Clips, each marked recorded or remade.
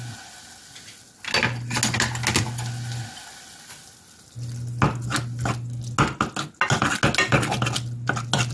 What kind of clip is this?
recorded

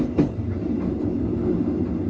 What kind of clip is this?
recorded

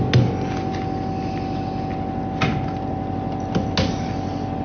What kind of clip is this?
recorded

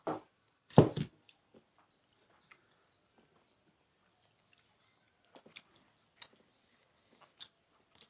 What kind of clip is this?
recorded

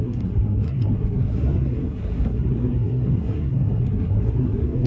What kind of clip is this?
remade